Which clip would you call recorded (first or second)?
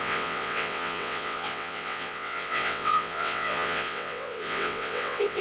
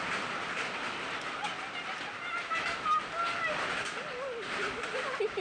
second